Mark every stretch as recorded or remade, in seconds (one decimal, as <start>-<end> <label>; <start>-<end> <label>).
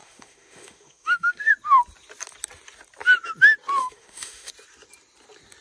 0.0-1.5 remade; 1.5-3.8 recorded; 3.8-4.5 remade; 4.5-5.6 recorded